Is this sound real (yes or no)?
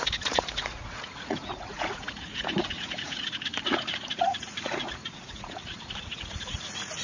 no